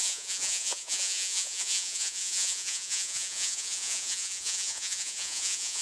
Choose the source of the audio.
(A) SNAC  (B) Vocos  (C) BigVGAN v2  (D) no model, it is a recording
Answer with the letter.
B